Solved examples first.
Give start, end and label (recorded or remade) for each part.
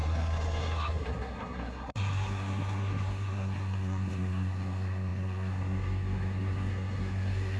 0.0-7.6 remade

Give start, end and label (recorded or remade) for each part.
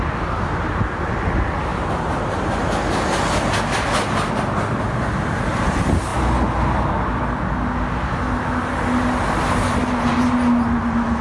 0.0-11.2 recorded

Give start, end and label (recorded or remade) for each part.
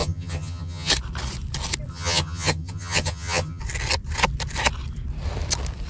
0.0-0.9 remade; 0.9-1.9 recorded; 1.9-3.6 remade; 3.6-5.9 recorded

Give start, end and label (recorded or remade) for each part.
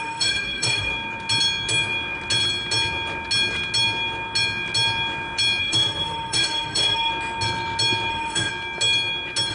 0.0-0.9 remade; 0.9-5.6 recorded; 5.6-7.1 remade; 7.1-8.1 recorded; 8.1-8.5 remade; 8.5-9.5 recorded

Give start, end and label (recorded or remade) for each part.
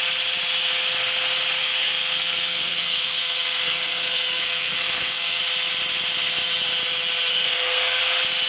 0.0-1.6 recorded; 1.6-5.4 remade; 5.4-7.3 recorded; 7.3-8.0 remade; 8.0-8.5 recorded